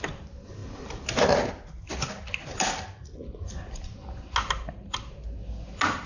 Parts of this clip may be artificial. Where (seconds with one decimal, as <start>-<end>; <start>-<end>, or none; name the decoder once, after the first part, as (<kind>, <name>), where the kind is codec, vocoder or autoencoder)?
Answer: none